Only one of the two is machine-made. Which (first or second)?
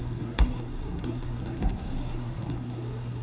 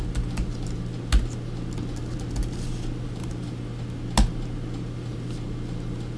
first